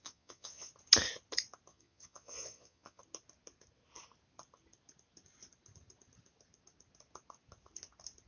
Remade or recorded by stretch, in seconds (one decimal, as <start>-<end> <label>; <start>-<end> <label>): 0.0-0.7 remade; 0.7-1.7 recorded; 1.7-3.0 remade; 3.0-8.3 recorded